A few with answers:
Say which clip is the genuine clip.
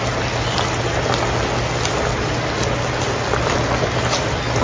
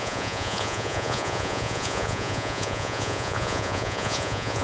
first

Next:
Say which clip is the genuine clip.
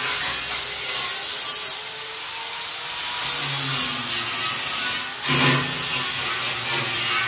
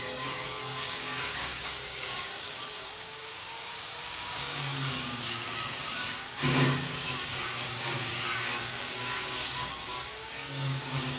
first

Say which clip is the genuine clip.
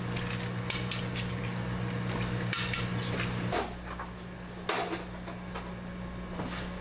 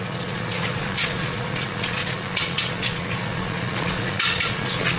first